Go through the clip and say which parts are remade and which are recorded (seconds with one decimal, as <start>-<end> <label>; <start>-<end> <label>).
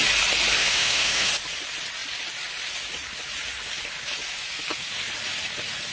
0.0-0.6 recorded; 0.6-1.3 remade; 1.3-5.9 recorded